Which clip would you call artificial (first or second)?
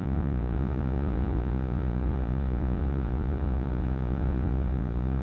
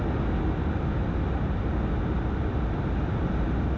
first